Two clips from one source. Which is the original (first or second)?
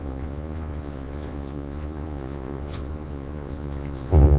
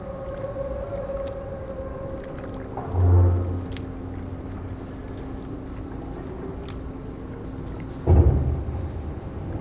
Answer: second